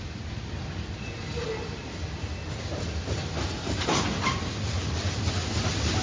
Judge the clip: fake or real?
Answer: real